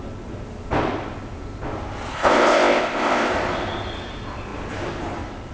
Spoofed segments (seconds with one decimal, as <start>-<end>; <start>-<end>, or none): 2.1-3.3

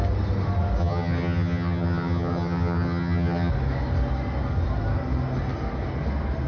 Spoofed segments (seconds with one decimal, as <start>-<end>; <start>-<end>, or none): 0.8-3.5